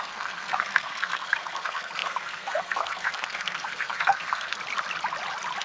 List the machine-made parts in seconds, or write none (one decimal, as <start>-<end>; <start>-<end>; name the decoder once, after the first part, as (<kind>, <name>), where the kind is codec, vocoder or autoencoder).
0.0-4.6 (codec, SNAC)